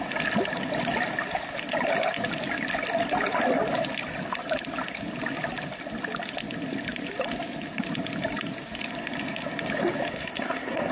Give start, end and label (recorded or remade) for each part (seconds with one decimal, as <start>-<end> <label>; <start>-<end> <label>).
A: 0.0-10.1 recorded; 10.1-10.9 remade